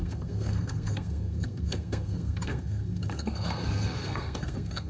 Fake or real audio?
fake